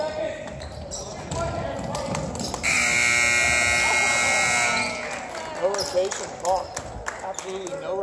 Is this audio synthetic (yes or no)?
no